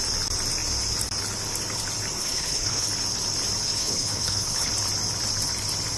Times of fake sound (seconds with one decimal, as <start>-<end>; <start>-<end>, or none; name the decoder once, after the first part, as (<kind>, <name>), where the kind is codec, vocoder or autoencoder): 2.2-2.9 (codec, HILCodec); 3.6-4.7